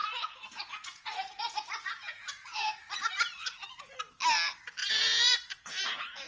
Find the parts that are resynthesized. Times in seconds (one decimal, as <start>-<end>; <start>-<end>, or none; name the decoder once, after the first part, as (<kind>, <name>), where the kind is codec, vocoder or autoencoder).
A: 0.0-2.6 (vocoder, Vocos); 4.8-6.3